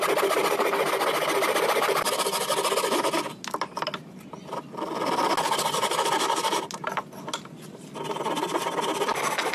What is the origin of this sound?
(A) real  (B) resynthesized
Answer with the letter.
A